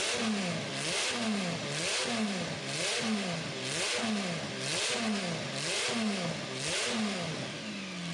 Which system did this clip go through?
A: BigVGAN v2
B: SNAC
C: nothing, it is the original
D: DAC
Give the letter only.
C